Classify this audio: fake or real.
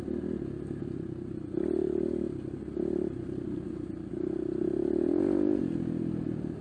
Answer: real